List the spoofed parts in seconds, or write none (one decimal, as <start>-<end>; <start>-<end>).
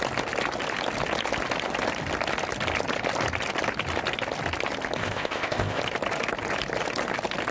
5.0-5.8